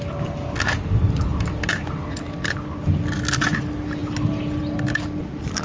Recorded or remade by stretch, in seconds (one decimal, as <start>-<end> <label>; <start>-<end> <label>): 0.0-5.6 recorded